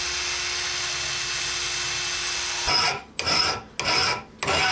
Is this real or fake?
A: real